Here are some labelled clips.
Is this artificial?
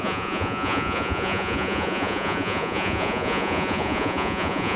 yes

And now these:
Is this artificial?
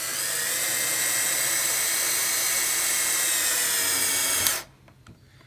no